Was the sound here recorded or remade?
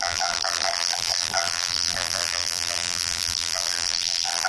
remade